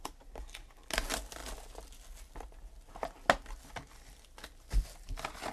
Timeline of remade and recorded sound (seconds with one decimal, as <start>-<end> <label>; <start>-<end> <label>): 0.0-5.5 recorded